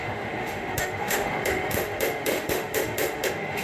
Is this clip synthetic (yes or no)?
yes